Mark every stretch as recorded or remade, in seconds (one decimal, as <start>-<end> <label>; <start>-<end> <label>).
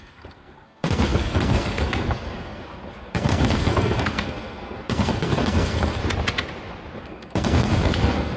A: 0.0-6.0 remade; 6.0-7.0 recorded; 7.0-8.4 remade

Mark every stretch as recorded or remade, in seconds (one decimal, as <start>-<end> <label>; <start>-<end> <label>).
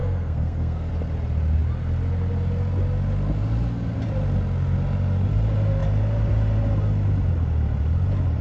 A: 0.0-0.9 remade; 0.9-8.4 recorded